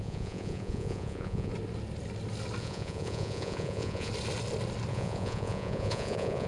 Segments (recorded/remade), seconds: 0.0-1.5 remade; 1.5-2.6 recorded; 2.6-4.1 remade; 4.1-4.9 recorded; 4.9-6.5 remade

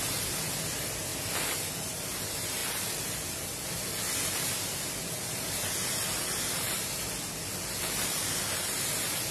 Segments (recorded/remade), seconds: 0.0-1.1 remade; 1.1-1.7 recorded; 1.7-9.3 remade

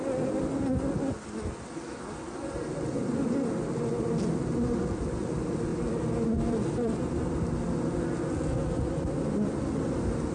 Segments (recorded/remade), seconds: 0.0-10.3 recorded

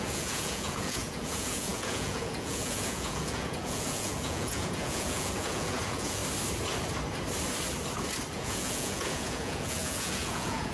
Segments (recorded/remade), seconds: 0.0-6.2 remade; 6.2-8.3 recorded; 8.3-10.7 remade

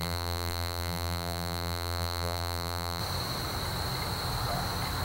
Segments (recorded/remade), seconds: 0.0-3.0 remade; 3.0-5.0 recorded

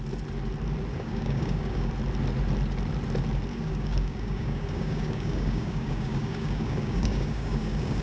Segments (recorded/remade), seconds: 0.0-0.9 recorded; 0.9-1.9 remade; 1.9-3.5 recorded; 3.5-8.0 remade

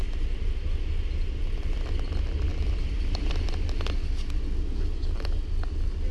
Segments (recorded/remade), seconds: 0.0-6.1 recorded

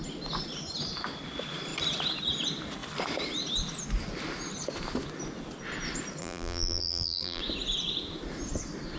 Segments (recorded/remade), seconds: 0.0-6.2 recorded; 6.2-7.4 remade; 7.4-9.0 recorded